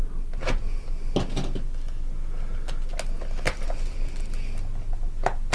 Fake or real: real